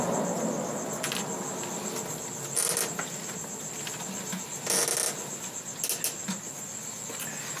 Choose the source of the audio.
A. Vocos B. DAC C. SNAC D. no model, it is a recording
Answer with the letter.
D